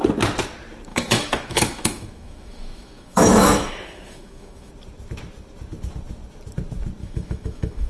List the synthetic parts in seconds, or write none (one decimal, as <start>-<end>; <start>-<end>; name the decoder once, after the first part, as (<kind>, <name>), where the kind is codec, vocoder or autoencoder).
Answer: 0.9-4.7 (autoencoder, DAC-VAE); 7.0-7.9